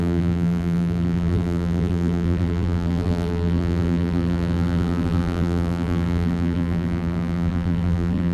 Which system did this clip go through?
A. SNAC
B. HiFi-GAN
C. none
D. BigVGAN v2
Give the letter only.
D